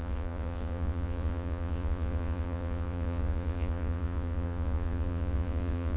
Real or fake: fake